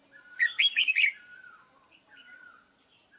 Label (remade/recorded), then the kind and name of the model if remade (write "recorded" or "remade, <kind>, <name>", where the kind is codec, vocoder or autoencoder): recorded